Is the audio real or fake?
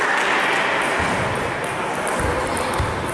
real